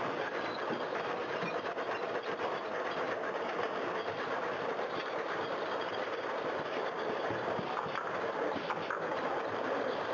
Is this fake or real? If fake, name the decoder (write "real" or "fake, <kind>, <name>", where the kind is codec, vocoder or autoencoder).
fake, vocoder, BigVGAN v2